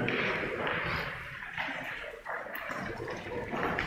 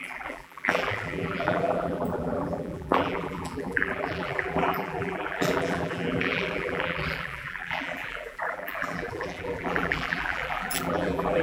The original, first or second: first